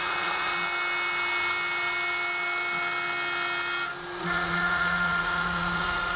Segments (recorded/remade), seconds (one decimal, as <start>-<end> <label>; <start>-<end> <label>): 0.0-0.5 remade; 0.5-4.2 recorded; 4.2-6.2 remade